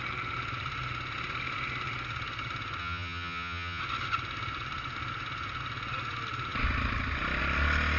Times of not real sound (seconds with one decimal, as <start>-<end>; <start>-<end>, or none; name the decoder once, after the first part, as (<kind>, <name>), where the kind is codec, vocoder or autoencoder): 2.8-3.8 (vocoder, HiFi-GAN)